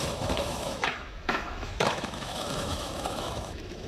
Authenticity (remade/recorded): remade